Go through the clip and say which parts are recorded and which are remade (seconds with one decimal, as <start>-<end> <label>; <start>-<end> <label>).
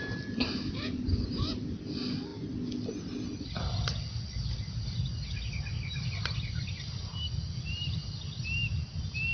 0.0-9.3 recorded